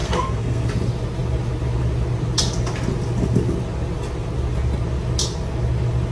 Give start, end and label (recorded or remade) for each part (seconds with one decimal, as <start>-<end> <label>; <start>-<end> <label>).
0.0-0.7 remade; 0.7-6.1 recorded